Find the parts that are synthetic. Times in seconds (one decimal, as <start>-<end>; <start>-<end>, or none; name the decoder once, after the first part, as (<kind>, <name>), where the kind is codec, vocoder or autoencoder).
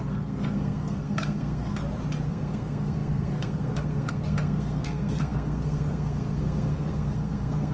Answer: 0.0-1.8 (codec, SNAC); 2.3-7.7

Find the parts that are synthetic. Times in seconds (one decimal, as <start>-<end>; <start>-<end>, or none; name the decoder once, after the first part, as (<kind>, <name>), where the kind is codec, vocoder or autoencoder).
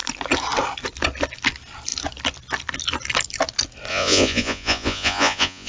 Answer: 3.9-5.7 (vocoder, Vocos)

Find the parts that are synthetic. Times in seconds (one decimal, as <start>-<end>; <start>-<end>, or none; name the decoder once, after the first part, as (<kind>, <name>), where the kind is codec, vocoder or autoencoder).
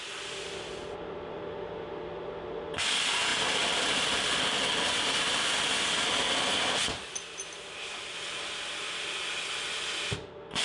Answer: none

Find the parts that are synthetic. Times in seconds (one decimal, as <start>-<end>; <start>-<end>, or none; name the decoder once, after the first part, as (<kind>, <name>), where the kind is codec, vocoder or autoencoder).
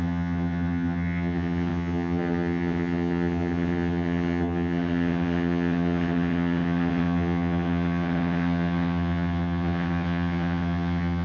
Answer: 0.0-11.2 (vocoder, HiFi-GAN)